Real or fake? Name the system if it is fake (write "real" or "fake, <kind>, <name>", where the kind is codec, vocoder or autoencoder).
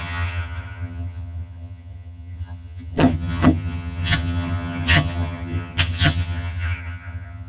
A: fake, vocoder, HiFi-GAN